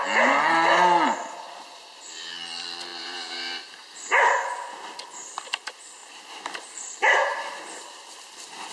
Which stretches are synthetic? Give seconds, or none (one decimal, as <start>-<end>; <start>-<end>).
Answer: 2.9-3.8; 6.0-7.8